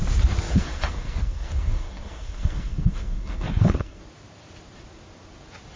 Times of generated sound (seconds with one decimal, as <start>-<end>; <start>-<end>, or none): 0.5-4.0